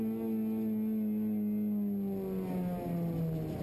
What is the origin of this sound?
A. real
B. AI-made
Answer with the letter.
A